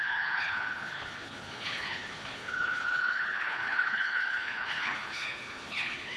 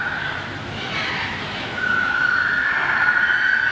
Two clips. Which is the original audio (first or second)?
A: second